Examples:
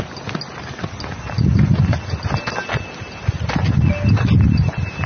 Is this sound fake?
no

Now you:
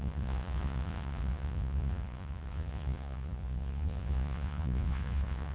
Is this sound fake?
yes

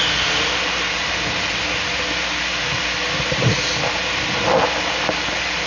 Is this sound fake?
no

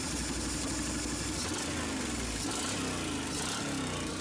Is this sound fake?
no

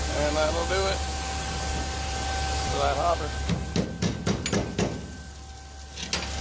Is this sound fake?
no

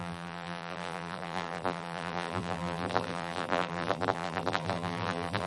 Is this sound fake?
yes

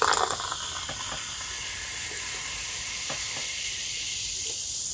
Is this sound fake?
no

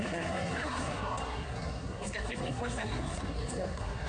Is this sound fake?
yes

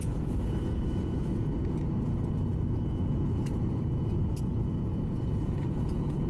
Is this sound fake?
yes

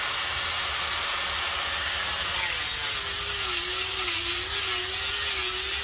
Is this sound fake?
no